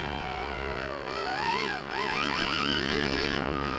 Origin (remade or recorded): remade